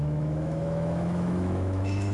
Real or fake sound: fake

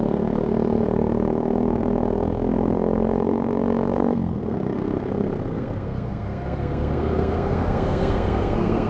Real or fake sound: fake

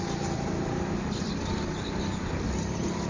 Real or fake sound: fake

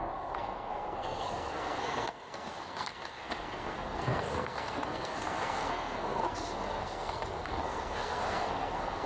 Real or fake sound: fake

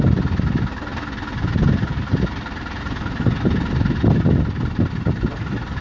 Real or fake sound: real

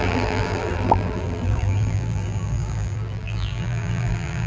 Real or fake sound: fake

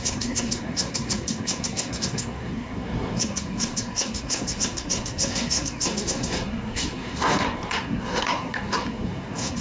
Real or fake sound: fake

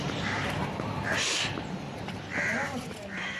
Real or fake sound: fake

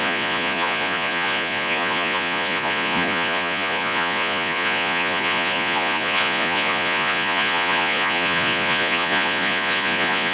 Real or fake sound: fake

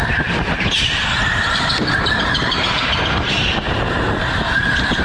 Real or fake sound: fake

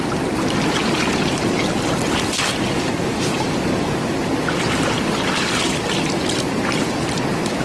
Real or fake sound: real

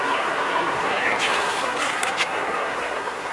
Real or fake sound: fake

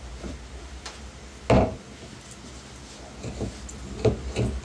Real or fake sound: real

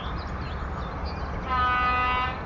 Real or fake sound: real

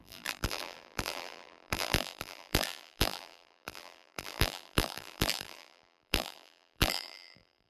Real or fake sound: fake